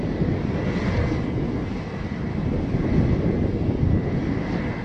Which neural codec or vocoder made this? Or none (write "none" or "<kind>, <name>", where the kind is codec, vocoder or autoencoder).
none